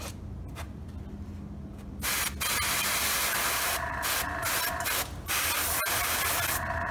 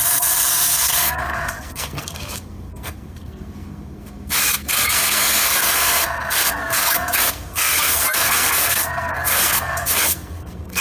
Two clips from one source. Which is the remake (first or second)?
second